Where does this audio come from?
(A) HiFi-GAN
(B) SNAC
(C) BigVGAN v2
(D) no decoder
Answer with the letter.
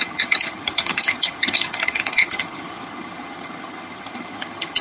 A